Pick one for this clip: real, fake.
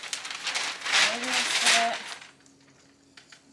real